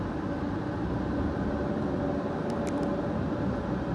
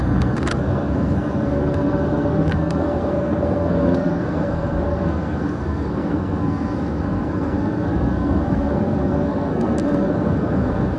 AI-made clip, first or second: second